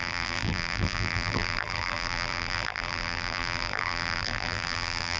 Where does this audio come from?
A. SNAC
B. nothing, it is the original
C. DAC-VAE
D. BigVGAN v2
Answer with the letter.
D